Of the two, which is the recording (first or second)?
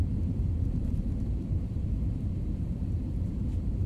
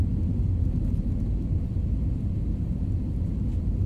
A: second